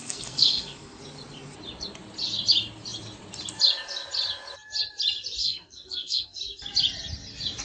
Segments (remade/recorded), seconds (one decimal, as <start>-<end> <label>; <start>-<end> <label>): 0.0-1.0 remade; 1.0-5.4 recorded; 5.4-6.4 remade; 6.4-7.6 recorded